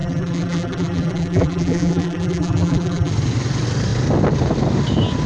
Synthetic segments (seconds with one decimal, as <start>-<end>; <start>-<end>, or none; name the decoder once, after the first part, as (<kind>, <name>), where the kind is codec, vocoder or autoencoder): 0.0-3.1 (vocoder, BigVGAN v2)